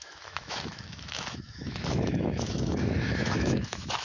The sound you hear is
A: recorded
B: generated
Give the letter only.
B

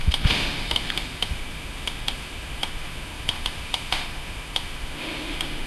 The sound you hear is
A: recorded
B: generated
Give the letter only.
B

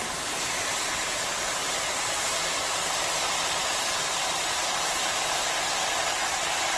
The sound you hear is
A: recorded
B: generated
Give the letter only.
A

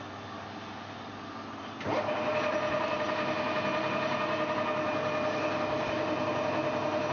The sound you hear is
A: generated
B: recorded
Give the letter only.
B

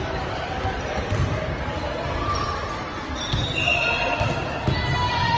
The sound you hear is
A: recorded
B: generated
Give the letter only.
A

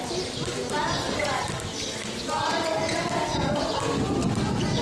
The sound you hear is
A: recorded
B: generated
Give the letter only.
A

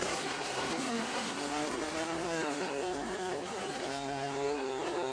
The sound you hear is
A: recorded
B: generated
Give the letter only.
B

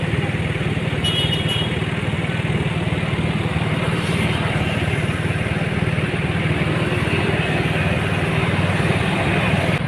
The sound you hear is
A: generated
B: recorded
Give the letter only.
B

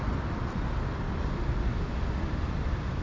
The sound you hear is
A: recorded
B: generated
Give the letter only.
A